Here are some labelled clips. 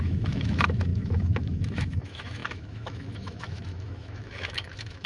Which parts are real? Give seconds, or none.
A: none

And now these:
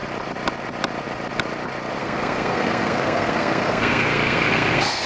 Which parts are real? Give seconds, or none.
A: 0.0-2.0

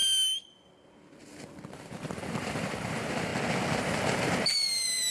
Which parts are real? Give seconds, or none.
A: 0.0-1.7; 3.3-3.8

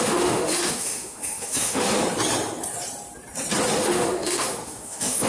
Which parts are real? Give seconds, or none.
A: 1.9-3.8

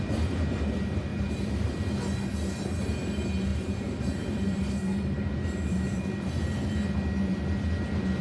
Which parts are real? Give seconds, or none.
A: 0.0-1.1; 1.8-3.5; 6.2-8.2